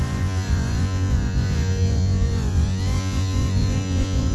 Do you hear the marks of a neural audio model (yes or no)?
yes